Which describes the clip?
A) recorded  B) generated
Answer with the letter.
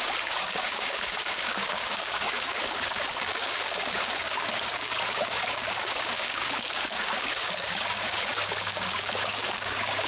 B